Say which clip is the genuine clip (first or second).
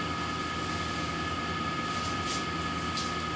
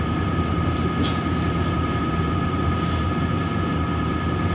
first